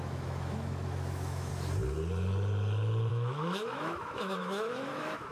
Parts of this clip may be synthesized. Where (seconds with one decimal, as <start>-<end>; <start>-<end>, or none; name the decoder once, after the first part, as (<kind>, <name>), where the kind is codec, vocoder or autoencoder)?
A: 0.0-1.5 (autoencoder, DAC-VAE); 3.1-5.3